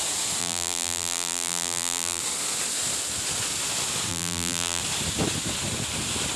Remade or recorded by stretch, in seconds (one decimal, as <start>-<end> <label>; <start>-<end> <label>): 0.0-0.4 recorded; 0.4-2.2 remade; 2.2-4.1 recorded; 4.1-4.8 remade; 4.8-6.4 recorded